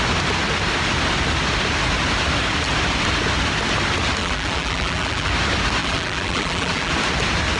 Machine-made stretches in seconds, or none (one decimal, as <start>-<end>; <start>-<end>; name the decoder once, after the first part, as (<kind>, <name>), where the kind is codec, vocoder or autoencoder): 4.2-5.3 (vocoder, BigVGAN v2); 5.8-6.9